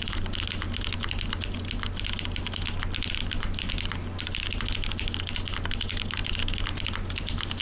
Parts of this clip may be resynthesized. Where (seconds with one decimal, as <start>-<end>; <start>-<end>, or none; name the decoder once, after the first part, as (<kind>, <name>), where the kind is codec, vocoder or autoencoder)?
none

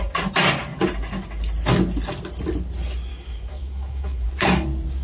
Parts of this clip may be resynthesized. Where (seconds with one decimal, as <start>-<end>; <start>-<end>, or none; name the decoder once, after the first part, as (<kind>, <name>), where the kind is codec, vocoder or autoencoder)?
3.1-4.3 (autoencoder, DAC-VAE)

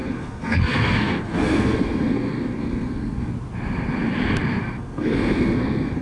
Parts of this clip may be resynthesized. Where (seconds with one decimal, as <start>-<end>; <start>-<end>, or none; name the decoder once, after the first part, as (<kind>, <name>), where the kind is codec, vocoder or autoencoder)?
0.0-3.3 (codec, SNAC); 4.6-6.0